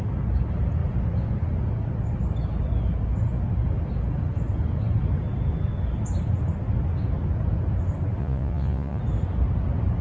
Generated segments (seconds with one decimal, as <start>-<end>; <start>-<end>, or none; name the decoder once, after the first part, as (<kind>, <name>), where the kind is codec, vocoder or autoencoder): 8.2-9.0 (vocoder, Vocos)